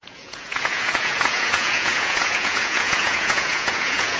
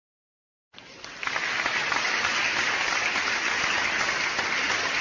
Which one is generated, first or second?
first